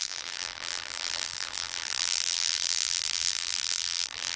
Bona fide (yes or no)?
no